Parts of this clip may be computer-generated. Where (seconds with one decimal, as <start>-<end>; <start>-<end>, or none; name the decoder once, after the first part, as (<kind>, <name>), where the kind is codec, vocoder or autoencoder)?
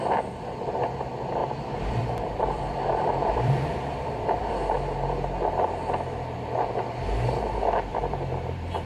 1.4-4.5 (vocoder, BigVGAN v2); 7.9-8.9